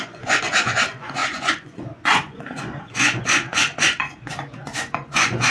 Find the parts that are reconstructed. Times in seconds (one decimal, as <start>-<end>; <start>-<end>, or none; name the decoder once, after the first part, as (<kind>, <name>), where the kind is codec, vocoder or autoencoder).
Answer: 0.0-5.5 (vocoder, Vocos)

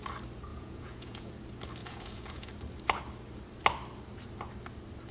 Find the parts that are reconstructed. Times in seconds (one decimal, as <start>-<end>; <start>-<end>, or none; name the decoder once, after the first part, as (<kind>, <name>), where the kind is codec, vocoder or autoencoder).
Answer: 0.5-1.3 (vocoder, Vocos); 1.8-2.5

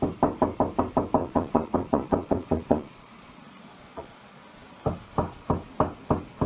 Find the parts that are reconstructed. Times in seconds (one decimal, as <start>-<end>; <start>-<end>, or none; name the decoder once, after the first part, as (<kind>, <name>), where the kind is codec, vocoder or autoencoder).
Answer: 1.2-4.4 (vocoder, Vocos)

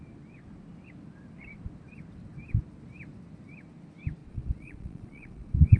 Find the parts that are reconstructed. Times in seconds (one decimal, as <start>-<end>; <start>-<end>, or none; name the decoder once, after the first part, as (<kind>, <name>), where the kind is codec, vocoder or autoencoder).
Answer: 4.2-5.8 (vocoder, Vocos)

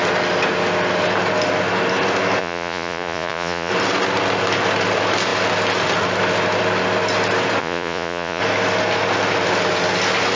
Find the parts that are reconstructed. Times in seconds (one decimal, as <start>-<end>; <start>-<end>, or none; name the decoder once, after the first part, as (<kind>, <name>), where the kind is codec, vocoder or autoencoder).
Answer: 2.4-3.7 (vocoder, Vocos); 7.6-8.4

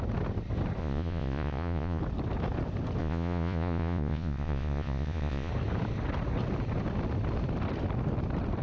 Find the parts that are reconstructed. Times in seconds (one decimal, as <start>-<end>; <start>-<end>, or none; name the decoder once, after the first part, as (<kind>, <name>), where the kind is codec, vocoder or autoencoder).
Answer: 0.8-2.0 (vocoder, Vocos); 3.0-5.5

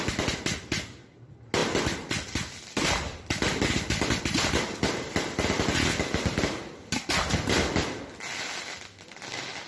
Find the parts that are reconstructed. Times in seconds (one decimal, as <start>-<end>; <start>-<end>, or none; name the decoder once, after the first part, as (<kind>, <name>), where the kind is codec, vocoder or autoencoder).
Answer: none